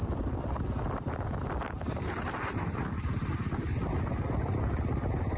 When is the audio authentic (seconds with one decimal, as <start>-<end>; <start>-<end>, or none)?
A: 0.0-5.4